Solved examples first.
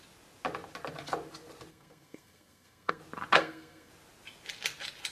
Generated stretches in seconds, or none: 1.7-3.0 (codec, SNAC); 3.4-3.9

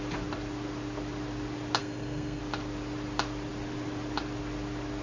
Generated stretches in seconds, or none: 1.8-2.4 (codec, SNAC)